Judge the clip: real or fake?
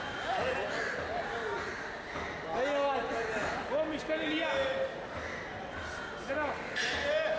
real